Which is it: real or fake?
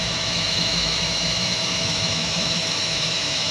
fake